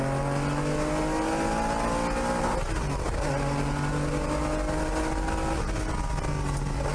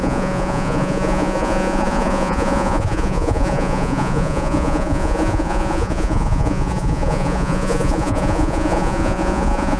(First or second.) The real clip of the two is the first